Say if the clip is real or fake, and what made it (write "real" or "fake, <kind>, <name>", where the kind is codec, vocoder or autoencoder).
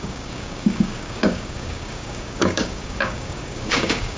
fake, codec, DAC